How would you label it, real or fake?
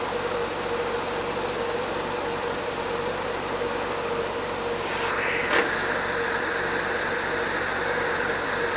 real